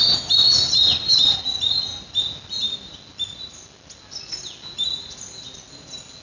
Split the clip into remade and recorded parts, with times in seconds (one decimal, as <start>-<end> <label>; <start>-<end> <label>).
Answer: 0.0-6.2 recorded